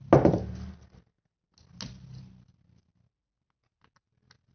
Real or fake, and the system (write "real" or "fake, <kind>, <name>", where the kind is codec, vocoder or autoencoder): real